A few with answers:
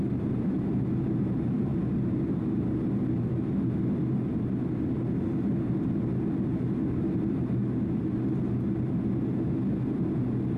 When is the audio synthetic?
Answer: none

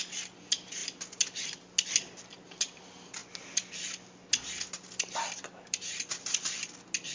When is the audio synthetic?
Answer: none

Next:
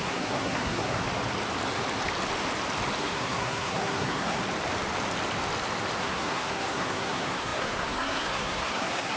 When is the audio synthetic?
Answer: 0.0-1.0 (codec, SNAC); 3.0-4.4; 6.0-9.2

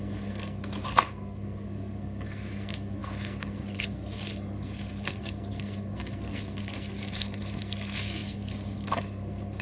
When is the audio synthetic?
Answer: 0.0-9.6 (codec, SNAC)

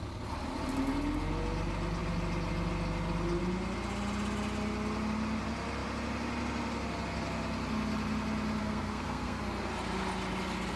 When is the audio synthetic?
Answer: 8.6-9.4 (codec, SNAC)

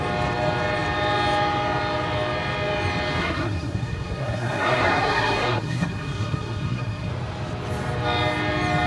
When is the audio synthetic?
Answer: 3.2-7.1 (codec, SNAC)

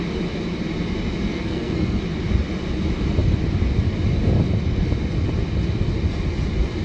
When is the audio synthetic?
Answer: 1.3-2.0 (codec, SNAC)